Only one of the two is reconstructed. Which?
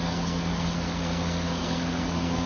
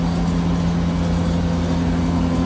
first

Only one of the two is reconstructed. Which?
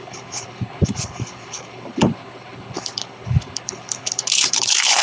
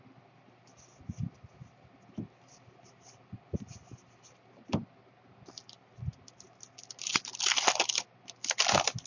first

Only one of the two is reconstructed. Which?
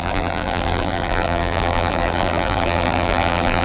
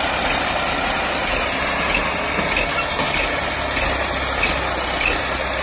first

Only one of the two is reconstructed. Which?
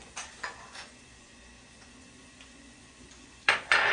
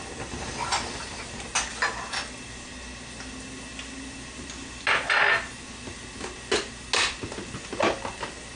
first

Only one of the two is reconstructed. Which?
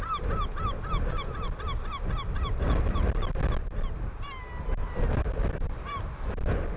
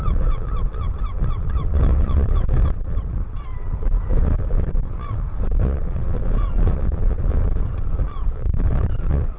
second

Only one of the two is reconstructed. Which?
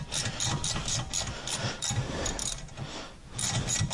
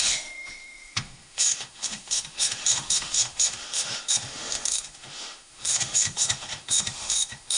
second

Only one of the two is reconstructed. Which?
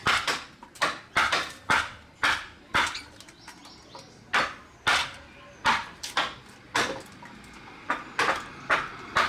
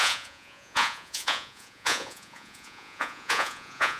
second